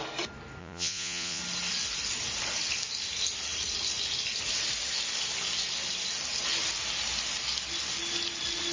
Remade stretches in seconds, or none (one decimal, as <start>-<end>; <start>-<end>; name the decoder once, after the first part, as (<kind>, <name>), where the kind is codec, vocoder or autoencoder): 0.6-1.4 (vocoder, Vocos)